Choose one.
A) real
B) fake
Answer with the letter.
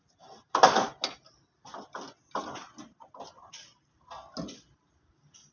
A